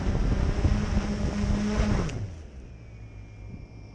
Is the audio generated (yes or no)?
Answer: no